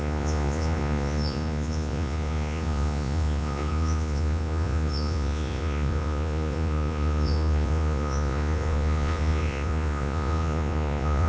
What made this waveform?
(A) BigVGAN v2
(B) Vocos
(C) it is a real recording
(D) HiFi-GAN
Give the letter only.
B